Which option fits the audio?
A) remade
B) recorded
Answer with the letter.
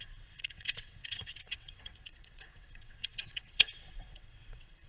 A